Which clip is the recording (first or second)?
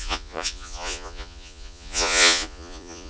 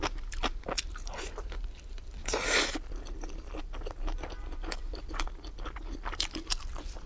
second